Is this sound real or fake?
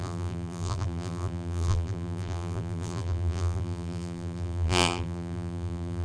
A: fake